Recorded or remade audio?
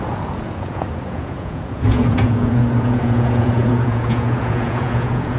remade